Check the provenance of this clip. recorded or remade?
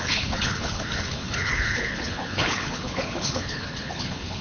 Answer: remade